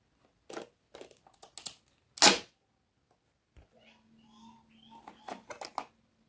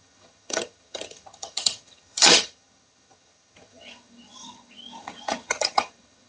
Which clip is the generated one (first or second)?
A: second